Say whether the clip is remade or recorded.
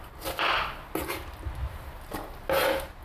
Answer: recorded